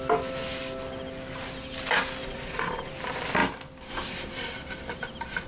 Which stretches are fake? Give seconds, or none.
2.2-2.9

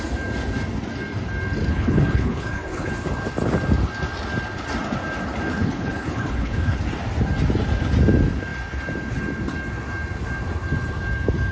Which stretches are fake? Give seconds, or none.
1.7-2.9; 5.5-6.8

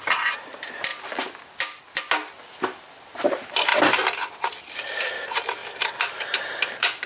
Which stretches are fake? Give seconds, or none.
0.0-0.9; 2.6-3.7; 4.6-7.1

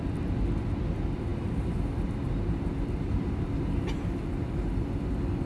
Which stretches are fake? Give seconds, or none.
none

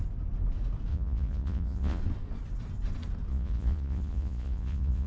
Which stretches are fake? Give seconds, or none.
0.9-2.0; 3.3-5.1

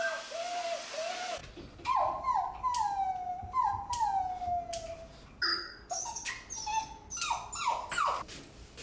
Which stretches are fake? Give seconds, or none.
5.5-6.3

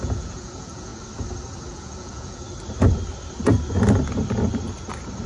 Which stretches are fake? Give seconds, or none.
0.0-0.9; 1.7-2.4

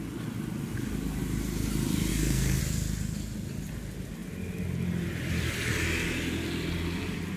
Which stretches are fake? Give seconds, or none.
2.1-2.6